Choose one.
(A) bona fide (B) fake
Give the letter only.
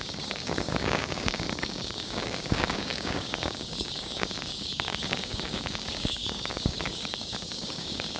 B